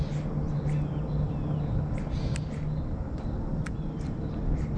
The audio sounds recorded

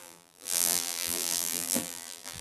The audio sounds remade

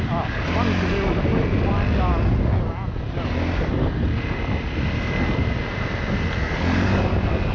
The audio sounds recorded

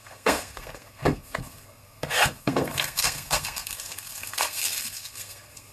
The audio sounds remade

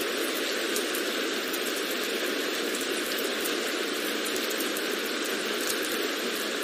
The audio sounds recorded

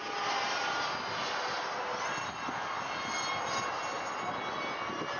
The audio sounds recorded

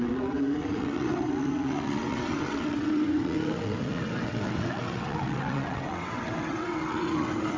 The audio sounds remade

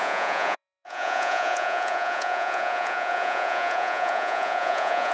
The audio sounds remade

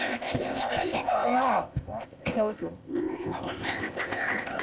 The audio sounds remade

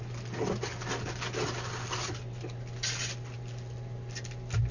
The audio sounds recorded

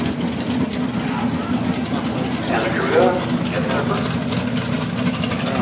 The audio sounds recorded